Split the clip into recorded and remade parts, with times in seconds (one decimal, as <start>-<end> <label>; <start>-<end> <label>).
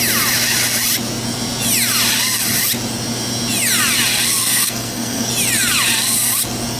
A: 0.0-4.4 recorded; 4.4-5.3 remade; 5.3-6.8 recorded